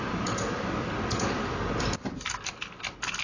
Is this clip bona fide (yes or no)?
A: yes